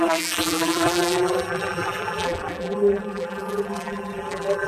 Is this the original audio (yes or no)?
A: no